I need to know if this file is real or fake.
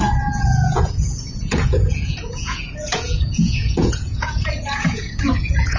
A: fake